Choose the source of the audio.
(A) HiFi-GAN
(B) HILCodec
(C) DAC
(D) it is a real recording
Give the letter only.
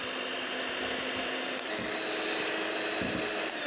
D